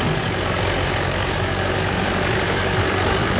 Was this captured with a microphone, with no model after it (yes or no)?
no